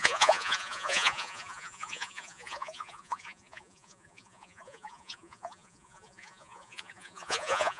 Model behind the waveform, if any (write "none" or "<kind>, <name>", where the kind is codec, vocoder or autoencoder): vocoder, Vocos